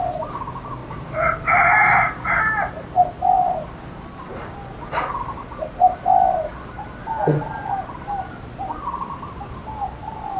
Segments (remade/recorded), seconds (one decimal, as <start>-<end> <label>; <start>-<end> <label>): 0.0-10.4 recorded